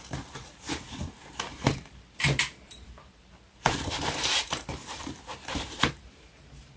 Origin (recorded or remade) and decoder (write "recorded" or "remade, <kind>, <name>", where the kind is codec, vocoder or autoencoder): remade, vocoder, BigVGAN v2